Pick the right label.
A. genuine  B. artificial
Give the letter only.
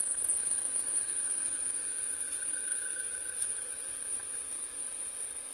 B